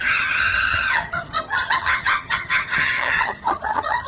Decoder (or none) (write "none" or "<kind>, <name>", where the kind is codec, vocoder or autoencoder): vocoder, HiFi-GAN